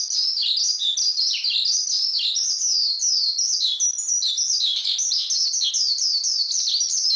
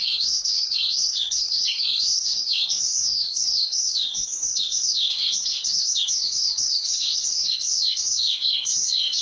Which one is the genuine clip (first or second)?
first